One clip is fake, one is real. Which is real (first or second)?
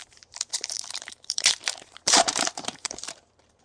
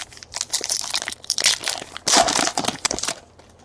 second